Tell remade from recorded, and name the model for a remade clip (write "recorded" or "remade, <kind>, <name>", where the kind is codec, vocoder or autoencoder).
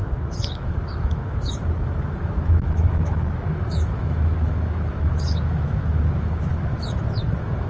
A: remade, autoencoder, DAC-VAE